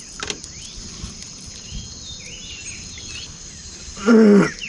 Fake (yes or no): no